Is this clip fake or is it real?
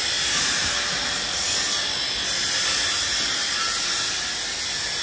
real